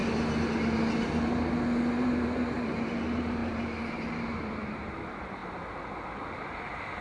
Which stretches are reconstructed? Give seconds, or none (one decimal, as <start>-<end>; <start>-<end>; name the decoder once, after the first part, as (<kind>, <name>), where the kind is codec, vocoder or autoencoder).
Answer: 1.9-5.4 (vocoder, BigVGAN v2); 6.3-7.0